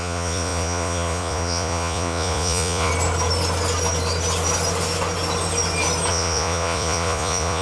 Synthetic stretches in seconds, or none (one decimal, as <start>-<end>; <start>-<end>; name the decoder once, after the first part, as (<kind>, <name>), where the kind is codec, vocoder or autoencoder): 0.0-2.9 (vocoder, Vocos); 6.1-7.6